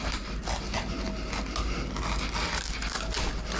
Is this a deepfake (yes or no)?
no